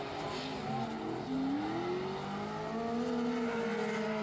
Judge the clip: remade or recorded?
recorded